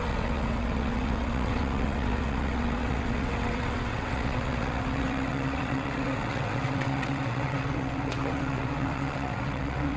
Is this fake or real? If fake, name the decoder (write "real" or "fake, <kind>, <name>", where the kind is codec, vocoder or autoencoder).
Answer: fake, vocoder, WaveNeXt